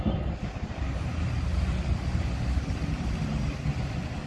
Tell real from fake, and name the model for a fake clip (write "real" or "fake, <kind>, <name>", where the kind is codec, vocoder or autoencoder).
real